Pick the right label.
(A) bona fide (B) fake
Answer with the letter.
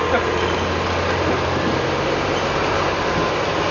A